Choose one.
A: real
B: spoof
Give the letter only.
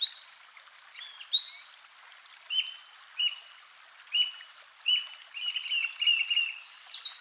A